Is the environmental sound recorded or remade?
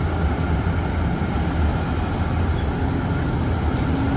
recorded